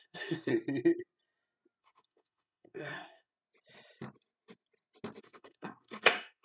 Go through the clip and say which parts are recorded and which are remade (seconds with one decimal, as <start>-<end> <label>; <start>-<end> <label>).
0.0-0.5 remade; 0.5-1.8 recorded; 1.8-3.3 remade; 3.3-5.2 recorded; 5.2-6.4 remade